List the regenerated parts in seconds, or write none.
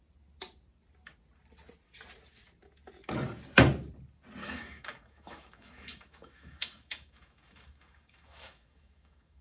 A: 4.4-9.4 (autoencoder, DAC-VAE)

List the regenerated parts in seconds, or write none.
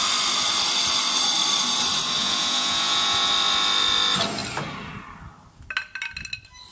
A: 2.2-3.3 (vocoder, Vocos)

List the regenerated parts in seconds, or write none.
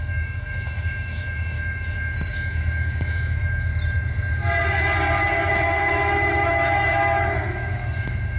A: 0.0-3.7 (autoencoder, DAC-VAE); 5.5-8.4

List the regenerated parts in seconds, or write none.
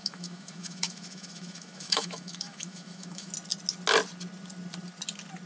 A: 0.0-3.3 (autoencoder, DAC-VAE)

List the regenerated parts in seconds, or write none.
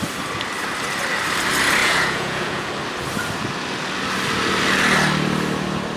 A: 1.8-2.7 (vocoder, Vocos)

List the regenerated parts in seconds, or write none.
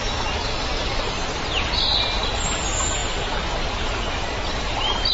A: 0.4-1.4 (vocoder, BigVGAN v2)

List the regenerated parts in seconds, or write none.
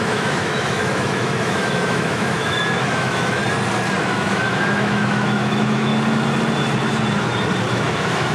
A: 0.0-3.4 (autoencoder, DAC-VAE); 4.0-5.9; 7.7-8.3